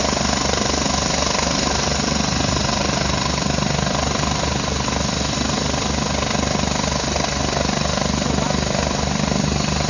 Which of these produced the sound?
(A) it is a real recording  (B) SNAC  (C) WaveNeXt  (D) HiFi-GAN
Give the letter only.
A